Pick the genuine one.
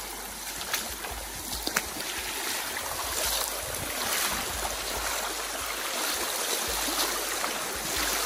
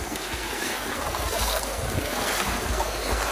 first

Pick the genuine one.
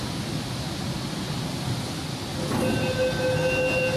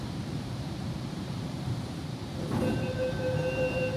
first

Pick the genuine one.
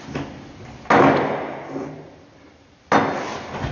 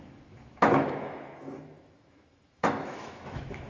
first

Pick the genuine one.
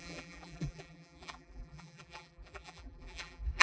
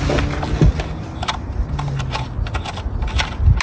second